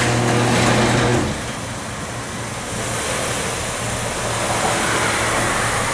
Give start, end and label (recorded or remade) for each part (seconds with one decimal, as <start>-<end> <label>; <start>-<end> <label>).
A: 0.0-5.9 recorded